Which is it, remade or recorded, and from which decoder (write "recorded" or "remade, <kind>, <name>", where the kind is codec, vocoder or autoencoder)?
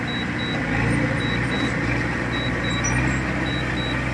recorded